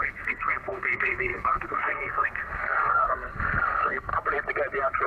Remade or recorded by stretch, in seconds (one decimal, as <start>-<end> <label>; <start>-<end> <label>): 0.0-4.1 remade; 4.1-5.1 recorded